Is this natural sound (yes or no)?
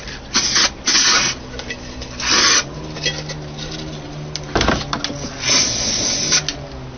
yes